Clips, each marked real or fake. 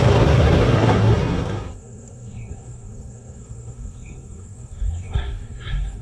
fake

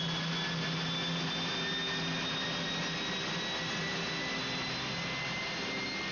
real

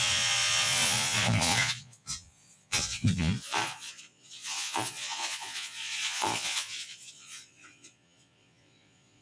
fake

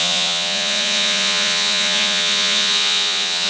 fake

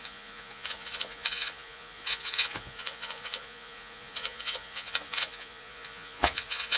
fake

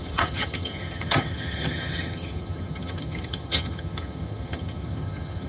fake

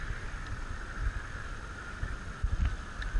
real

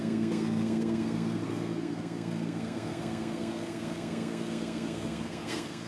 fake